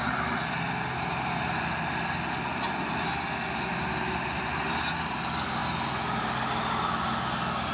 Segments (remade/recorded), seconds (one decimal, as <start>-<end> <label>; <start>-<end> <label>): 0.0-7.7 recorded